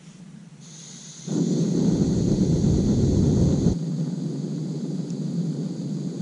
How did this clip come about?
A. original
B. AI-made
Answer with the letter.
A